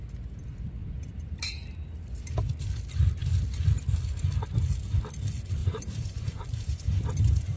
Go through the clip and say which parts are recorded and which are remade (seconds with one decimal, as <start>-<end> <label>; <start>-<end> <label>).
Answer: 0.0-5.6 recorded; 5.6-7.6 remade